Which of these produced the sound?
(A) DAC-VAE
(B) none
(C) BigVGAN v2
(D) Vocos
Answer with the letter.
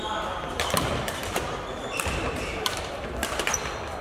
C